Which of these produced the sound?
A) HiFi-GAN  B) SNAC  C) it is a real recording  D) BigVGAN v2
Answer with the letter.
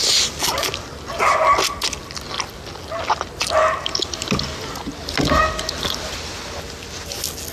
C